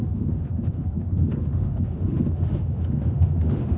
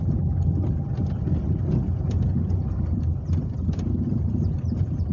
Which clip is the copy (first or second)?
first